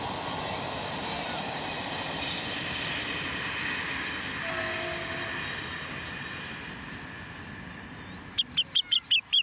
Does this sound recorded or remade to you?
recorded